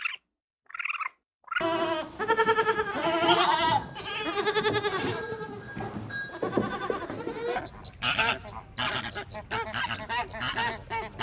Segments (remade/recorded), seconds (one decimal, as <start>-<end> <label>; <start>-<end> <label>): 0.0-11.2 recorded